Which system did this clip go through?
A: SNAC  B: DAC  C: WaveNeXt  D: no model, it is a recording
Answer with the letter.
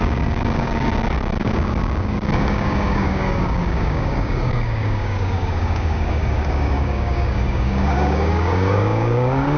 B